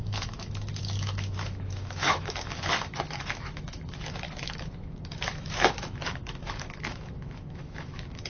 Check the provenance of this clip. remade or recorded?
remade